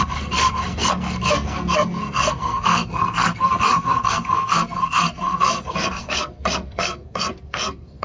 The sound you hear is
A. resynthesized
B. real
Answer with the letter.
A